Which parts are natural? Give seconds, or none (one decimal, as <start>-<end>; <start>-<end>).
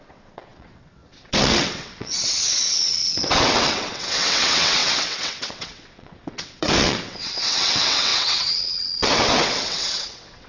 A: none